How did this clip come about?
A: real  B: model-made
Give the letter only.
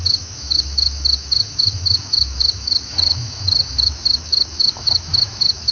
B